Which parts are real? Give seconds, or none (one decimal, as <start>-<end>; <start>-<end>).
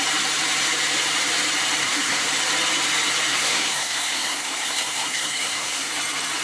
0.0-1.8; 2.3-3.3; 5.9-6.4